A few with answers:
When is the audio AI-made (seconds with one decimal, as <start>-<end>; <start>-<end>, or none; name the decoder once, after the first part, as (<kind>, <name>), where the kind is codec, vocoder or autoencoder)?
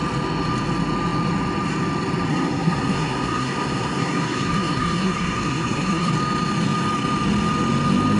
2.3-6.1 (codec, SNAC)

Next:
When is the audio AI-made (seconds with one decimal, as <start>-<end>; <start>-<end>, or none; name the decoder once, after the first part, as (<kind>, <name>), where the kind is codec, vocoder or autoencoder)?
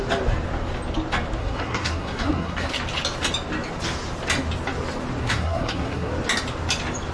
1.4-2.7 (codec, SNAC); 5.2-6.1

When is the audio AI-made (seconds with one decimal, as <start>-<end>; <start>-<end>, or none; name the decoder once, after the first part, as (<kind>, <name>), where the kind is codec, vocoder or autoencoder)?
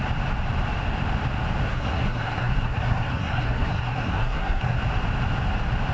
1.7-4.8 (codec, SNAC)